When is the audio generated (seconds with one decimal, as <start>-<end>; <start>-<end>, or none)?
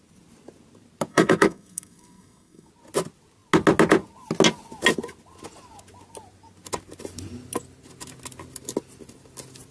1.1-2.7